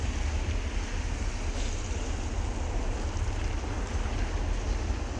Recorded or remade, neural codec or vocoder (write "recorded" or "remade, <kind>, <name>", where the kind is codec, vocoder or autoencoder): recorded